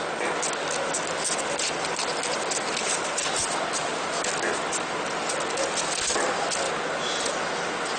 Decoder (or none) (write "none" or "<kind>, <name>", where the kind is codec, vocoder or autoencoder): none